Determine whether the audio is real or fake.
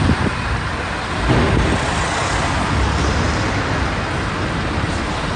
real